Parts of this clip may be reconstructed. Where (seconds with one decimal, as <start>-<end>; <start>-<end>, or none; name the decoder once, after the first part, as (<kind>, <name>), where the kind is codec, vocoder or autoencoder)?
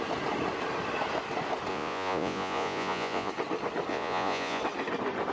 1.7-3.3 (vocoder, Vocos); 3.9-4.6